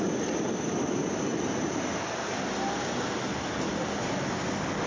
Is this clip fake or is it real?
real